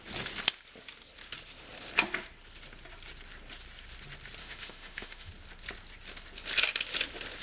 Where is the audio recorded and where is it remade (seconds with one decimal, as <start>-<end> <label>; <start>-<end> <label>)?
0.0-4.4 recorded; 4.4-5.3 remade; 5.3-7.4 recorded